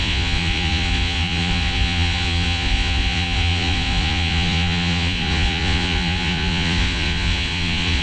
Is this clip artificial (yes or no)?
yes